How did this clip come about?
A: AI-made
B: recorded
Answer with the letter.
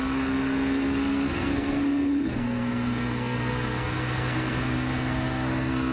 A